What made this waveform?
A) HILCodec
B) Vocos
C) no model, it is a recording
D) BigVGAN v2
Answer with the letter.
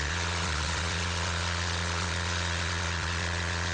B